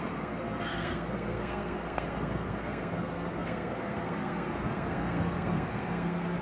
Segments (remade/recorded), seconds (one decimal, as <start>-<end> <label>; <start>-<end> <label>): 0.0-6.4 remade